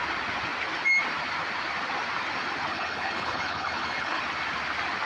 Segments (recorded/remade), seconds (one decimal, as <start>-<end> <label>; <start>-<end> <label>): 0.0-2.7 recorded; 2.7-4.2 remade; 4.2-5.1 recorded